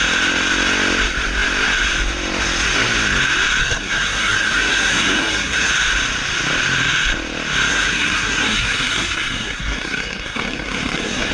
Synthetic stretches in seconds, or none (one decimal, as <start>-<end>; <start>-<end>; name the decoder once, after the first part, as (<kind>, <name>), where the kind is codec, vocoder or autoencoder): 3.6-5.7 (codec, SNAC); 7.7-11.3

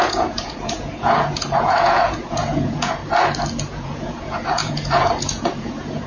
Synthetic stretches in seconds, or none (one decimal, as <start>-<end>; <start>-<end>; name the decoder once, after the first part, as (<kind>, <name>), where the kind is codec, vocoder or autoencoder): 0.0-3.0 (vocoder, Vocos); 3.6-6.1

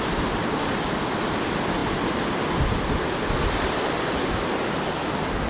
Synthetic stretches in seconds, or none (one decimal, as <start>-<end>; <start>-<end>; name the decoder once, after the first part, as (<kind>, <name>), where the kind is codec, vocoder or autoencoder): none